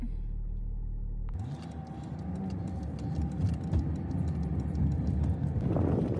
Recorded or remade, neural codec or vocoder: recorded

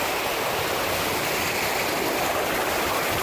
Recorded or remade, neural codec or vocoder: recorded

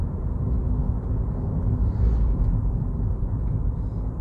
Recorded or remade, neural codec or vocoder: recorded